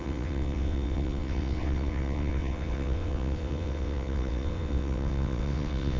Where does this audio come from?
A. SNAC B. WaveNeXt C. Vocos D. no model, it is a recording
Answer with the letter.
B